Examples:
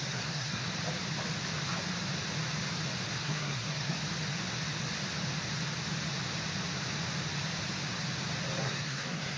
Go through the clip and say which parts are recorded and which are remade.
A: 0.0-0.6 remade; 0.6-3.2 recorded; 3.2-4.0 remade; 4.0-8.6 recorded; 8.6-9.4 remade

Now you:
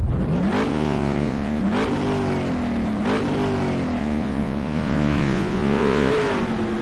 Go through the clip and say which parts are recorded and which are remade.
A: 0.0-0.7 recorded; 0.7-1.6 remade; 1.6-4.0 recorded; 4.0-6.1 remade; 6.1-6.8 recorded

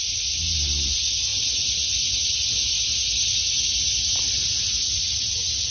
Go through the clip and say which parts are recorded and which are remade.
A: 0.0-5.7 recorded